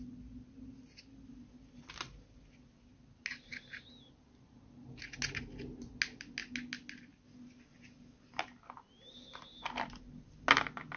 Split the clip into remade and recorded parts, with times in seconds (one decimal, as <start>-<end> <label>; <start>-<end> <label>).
0.0-11.0 recorded